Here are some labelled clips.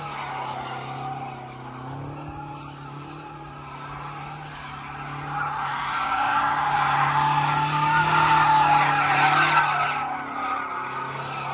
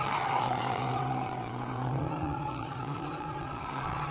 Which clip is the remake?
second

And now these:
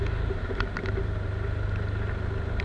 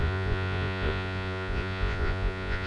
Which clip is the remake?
second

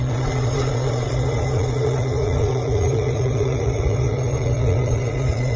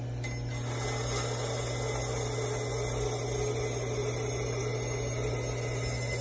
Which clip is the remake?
first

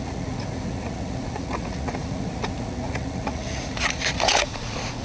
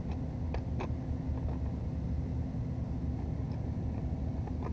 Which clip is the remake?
first